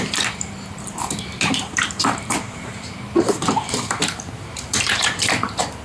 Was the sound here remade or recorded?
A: remade